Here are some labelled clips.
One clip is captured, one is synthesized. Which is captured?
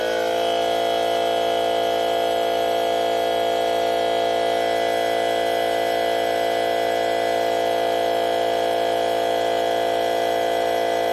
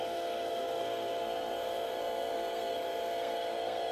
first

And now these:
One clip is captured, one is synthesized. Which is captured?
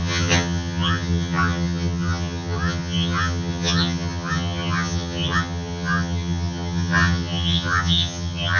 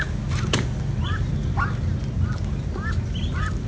second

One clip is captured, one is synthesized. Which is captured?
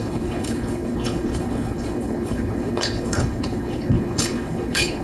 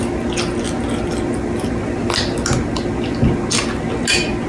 second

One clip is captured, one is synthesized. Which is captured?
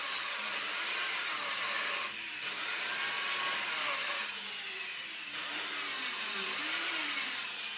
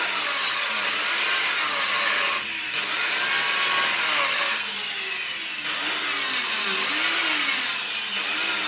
second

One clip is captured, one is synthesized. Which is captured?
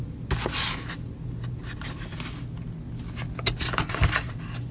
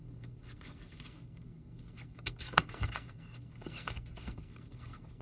first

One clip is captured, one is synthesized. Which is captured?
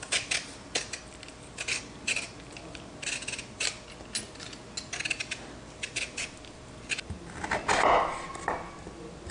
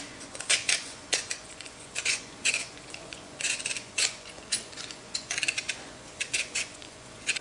first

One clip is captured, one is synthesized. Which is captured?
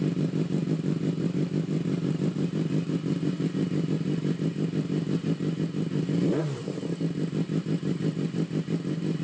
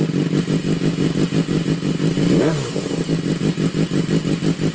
second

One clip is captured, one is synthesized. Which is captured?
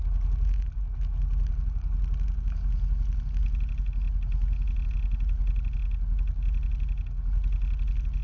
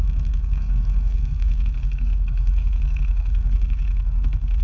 first